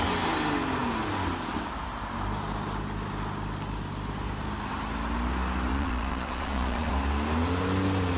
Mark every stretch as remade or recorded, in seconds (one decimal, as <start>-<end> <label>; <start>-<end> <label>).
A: 0.0-5.7 recorded; 5.7-6.9 remade; 6.9-8.2 recorded